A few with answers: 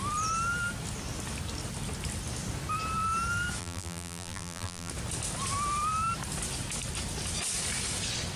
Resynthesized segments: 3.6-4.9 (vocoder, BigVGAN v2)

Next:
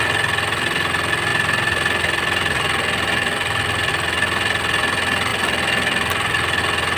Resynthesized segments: 1.3-3.9 (vocoder, BigVGAN v2); 5.3-6.6

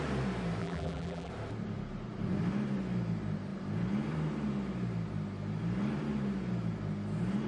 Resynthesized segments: 0.6-1.3 (vocoder, BigVGAN v2)

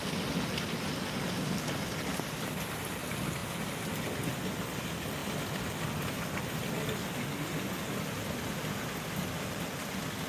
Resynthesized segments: none

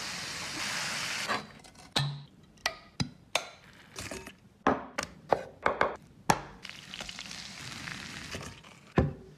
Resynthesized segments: none